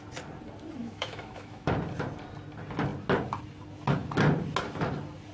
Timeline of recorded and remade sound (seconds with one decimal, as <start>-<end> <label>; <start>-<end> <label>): 0.0-0.8 recorded; 0.8-1.7 remade; 1.7-5.3 recorded